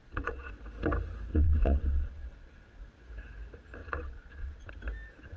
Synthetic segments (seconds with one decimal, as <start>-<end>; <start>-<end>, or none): 0.0-0.5; 1.3-2.9; 3.8-4.7